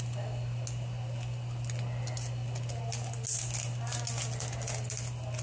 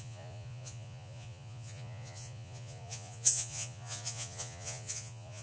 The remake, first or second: second